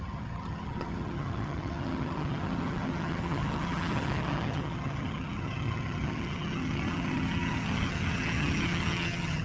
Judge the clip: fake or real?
fake